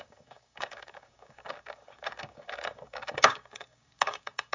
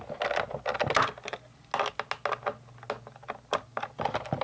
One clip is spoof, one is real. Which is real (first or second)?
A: second